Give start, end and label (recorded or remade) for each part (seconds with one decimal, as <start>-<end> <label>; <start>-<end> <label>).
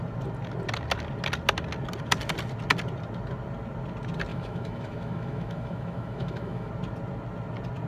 0.0-4.3 recorded; 4.3-6.7 remade; 6.7-7.9 recorded